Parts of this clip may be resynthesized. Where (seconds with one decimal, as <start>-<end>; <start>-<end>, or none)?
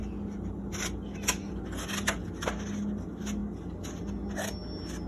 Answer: none